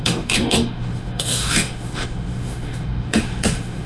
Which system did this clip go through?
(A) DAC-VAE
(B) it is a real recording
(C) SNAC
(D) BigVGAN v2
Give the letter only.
A